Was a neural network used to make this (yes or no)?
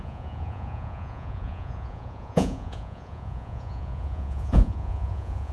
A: yes